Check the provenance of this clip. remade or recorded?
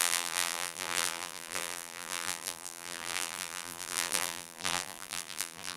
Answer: remade